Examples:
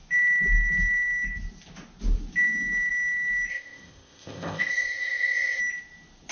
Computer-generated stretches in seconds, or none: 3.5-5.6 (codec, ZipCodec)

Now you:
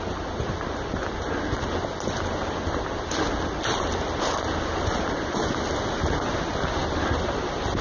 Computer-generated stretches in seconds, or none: none

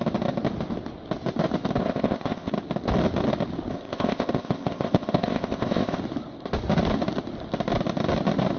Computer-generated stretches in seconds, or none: 1.8-2.5 (codec, ZipCodec); 3.7-6.0